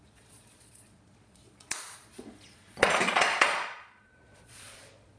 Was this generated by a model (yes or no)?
yes